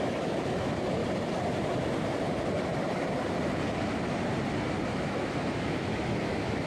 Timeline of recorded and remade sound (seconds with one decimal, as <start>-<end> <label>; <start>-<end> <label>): 0.0-1.0 remade; 1.0-5.0 recorded; 5.0-6.7 remade